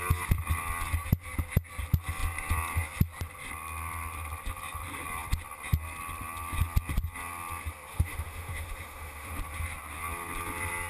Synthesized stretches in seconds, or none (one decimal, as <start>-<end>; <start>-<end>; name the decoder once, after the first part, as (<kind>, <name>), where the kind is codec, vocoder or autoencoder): 7.9-9.4 (autoencoder, DAC-VAE)